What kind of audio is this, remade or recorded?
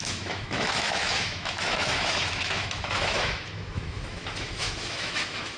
remade